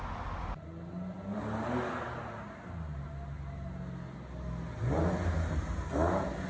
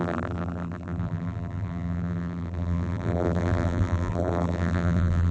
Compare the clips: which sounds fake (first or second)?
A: second